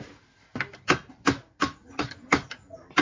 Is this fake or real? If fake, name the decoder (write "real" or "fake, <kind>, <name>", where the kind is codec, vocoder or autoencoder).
real